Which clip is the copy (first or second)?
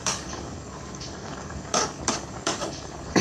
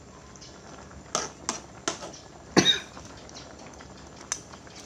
first